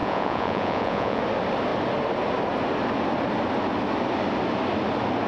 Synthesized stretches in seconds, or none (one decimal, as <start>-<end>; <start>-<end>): 0.0-1.2